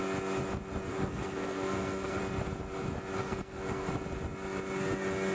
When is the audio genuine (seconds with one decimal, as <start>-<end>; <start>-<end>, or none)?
0.0-0.9; 2.2-3.2; 3.9-5.3